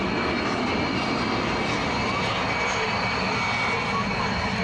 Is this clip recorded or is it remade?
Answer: recorded